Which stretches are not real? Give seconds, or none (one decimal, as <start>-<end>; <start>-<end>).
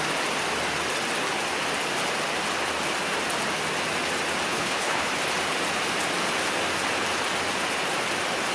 4.5-5.1